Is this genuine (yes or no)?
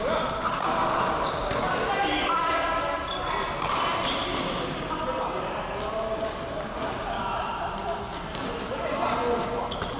yes